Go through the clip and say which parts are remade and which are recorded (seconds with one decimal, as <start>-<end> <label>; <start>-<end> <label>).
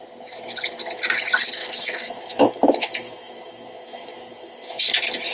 0.0-1.6 recorded; 1.6-4.8 remade; 4.8-5.3 recorded